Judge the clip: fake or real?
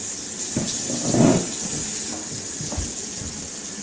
real